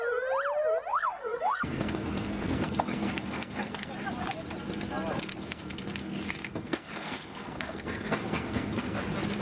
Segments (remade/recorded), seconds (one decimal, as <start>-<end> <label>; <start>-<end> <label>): 0.0-0.9 recorded; 0.9-3.9 remade; 3.9-5.3 recorded; 5.3-9.0 remade; 9.0-9.4 recorded